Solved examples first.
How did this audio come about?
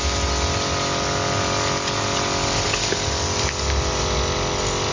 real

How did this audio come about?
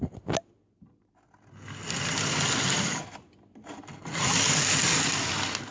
real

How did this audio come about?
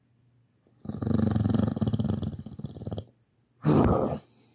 real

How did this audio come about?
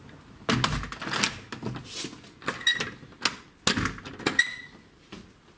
real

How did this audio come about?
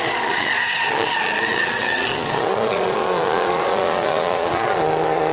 fake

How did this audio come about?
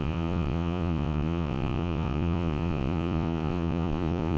fake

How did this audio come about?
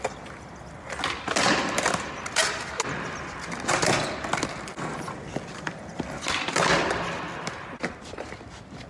real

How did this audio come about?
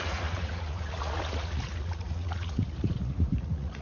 fake